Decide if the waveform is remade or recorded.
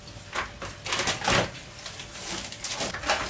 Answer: recorded